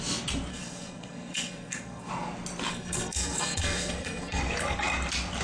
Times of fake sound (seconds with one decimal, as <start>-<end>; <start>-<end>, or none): 0.5-2.1; 2.7-4.4